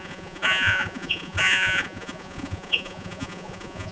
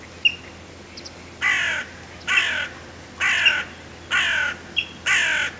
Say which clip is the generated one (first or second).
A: first